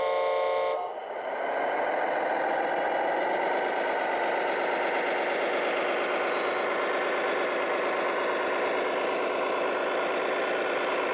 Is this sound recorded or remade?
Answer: recorded